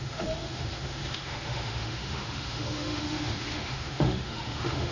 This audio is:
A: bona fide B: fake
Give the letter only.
B